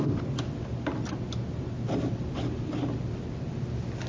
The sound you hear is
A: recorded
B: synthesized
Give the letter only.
A